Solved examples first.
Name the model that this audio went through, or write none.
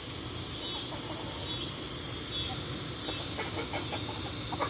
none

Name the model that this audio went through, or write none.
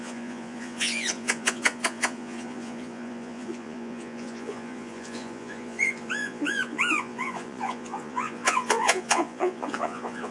vocoder, Vocos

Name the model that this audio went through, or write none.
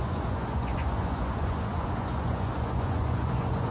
vocoder, Vocos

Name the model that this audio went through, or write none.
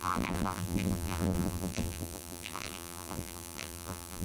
vocoder, BigVGAN v2